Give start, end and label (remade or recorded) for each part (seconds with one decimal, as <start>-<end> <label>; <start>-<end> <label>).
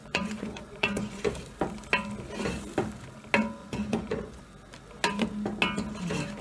0.0-1.2 remade; 1.2-3.6 recorded; 3.6-4.4 remade; 4.4-6.4 recorded